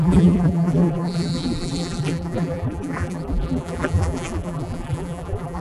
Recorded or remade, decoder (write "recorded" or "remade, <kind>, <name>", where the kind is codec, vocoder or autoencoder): remade, vocoder, BigVGAN v2